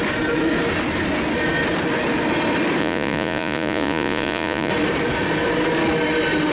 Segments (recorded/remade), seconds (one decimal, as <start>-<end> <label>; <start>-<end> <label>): 0.0-2.8 recorded; 2.8-4.7 remade; 4.7-6.5 recorded